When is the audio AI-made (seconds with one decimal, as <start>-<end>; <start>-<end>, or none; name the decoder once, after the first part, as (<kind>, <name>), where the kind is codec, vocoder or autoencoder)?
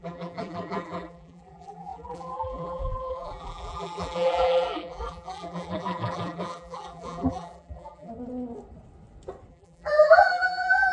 0.0-8.1 (vocoder, BigVGAN v2); 9.5-10.9